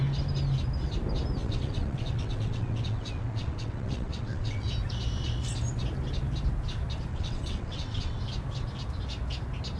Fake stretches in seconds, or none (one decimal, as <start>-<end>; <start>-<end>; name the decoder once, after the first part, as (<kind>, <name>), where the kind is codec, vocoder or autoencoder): 1.4-4.7 (vocoder, WaveNeXt); 7.1-8.2